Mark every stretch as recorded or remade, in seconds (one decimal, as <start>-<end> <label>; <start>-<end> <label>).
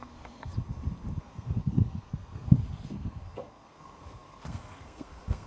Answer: 0.0-0.5 remade; 0.5-1.2 recorded; 1.2-5.5 remade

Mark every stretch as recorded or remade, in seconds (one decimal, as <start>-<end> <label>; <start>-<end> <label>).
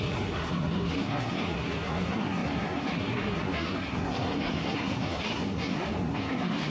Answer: 0.0-6.7 remade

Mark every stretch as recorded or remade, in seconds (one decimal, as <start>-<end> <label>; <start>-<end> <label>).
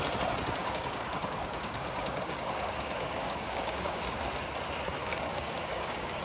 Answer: 0.0-0.6 recorded; 0.6-4.0 remade; 4.0-5.0 recorded; 5.0-6.2 remade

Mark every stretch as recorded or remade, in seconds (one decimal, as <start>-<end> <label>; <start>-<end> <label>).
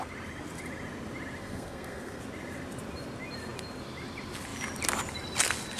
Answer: 0.0-1.4 recorded; 1.4-2.2 remade; 2.2-5.8 recorded